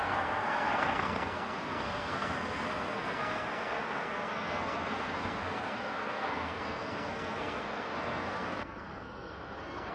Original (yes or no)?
no